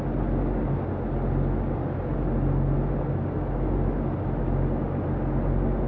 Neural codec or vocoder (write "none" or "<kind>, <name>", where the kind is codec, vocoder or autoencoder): none